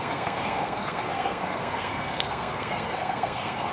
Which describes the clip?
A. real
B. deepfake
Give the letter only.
B